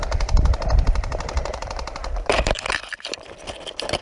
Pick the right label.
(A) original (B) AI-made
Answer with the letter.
B